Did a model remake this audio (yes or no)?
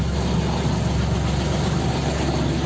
no